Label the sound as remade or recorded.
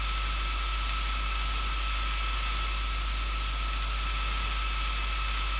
recorded